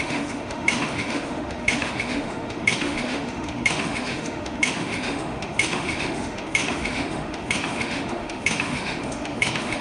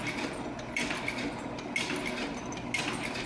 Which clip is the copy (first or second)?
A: first